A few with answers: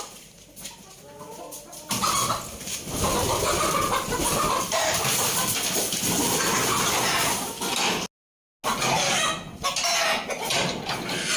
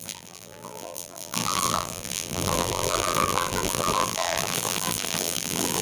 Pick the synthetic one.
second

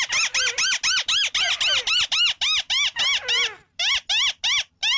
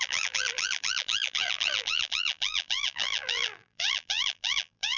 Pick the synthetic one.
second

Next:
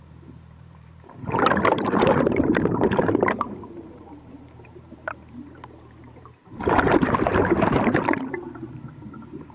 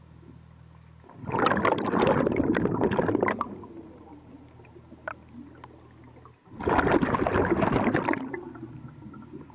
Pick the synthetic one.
first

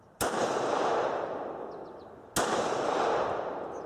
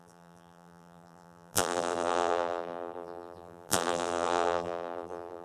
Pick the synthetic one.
second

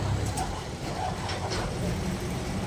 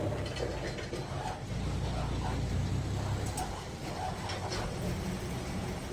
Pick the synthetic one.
first